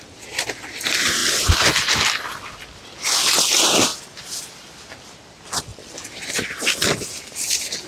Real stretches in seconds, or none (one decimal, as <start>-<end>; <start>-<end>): 0.0-5.7; 6.3-7.9